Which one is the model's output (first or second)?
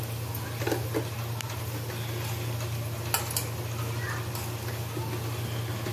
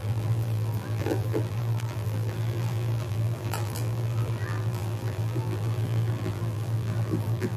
second